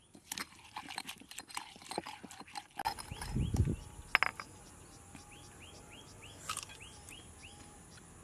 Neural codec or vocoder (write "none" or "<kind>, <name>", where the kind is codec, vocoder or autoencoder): none